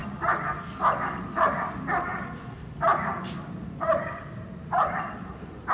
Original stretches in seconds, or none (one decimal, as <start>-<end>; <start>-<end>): 0.0-2.1